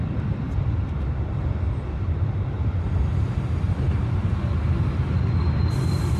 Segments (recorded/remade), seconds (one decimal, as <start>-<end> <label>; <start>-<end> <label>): 0.0-6.2 recorded